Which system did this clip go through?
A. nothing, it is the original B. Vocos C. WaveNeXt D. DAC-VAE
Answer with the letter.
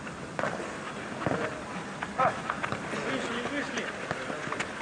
A